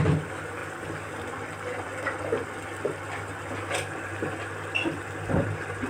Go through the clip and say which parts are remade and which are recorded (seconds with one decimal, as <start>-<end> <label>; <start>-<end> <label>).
0.0-5.9 recorded